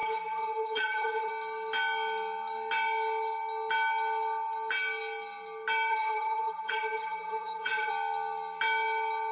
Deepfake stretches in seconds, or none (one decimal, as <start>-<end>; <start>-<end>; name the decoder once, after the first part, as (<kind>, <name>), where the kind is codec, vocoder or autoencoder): 0.0-1.3 (vocoder, BigVGAN v2); 5.9-7.9